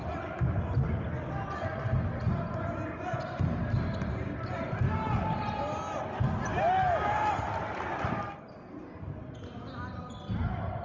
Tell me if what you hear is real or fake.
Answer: real